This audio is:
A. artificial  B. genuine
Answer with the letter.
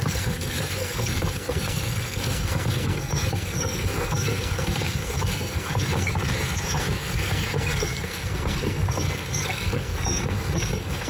A